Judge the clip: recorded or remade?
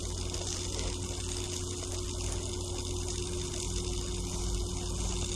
recorded